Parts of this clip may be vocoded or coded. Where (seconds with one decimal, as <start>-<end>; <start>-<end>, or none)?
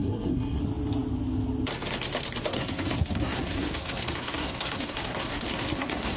0.0-0.6; 2.5-6.2